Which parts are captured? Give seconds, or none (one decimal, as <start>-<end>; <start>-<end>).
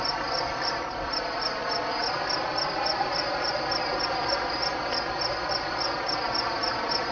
0.0-7.1